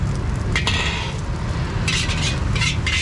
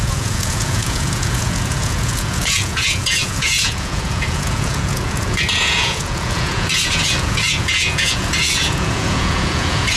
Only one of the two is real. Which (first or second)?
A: first